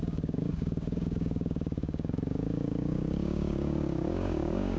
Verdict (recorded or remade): remade